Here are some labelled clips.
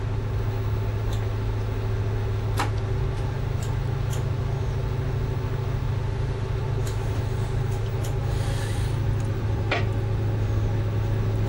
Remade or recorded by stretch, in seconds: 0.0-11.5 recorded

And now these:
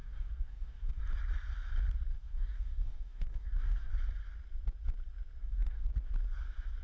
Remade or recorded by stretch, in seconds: 0.0-1.0 remade; 1.0-2.1 recorded; 2.1-3.9 remade; 3.9-5.4 recorded; 5.4-5.9 remade; 5.9-6.8 recorded

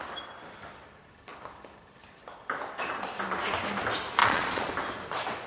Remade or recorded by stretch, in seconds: 0.0-4.2 recorded; 4.2-4.7 remade; 4.7-5.5 recorded

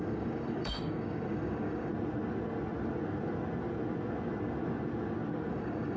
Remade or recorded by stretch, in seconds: 0.0-1.9 remade; 1.9-5.5 recorded; 5.5-6.0 remade

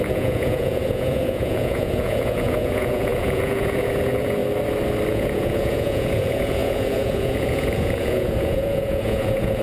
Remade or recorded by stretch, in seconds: 0.0-4.4 remade; 4.4-5.1 recorded; 5.1-9.6 remade

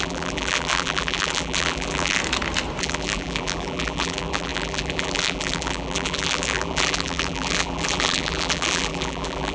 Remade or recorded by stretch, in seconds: 0.0-2.2 remade; 2.2-2.8 recorded; 2.8-9.5 remade